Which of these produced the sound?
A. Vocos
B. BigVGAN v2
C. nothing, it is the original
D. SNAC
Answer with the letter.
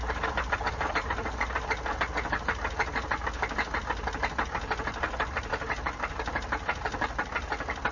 C